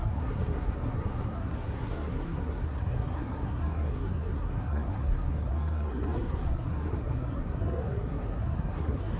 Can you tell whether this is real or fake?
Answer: fake